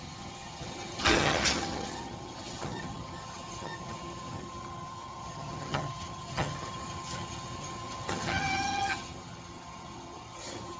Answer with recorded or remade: remade